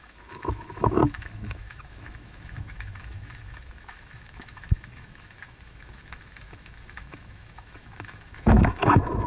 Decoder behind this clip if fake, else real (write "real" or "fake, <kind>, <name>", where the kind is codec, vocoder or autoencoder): fake, autoencoder, DAC-VAE